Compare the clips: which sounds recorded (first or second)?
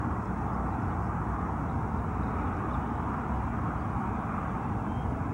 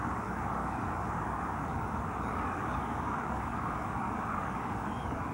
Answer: first